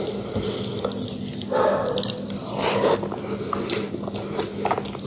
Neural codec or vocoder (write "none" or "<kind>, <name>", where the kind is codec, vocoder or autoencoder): none